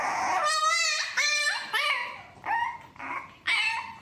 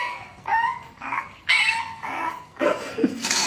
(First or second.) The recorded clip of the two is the first